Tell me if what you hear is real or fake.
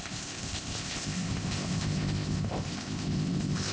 fake